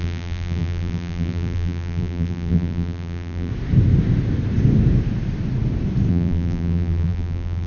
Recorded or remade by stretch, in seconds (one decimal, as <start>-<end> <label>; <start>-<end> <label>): 0.0-3.5 remade; 3.5-6.1 recorded; 6.1-7.7 remade